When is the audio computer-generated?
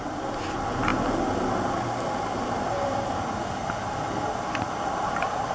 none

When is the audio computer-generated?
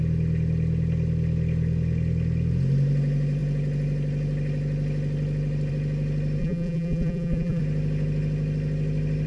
6.4-7.6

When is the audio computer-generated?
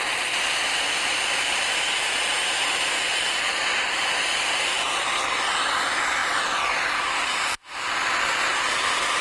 none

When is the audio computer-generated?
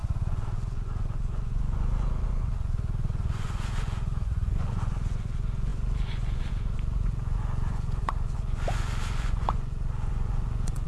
0.0-10.9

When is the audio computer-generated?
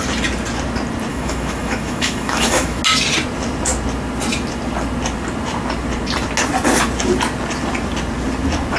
1.1-2.8